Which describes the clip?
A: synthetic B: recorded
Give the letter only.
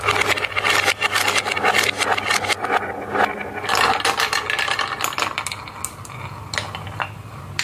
B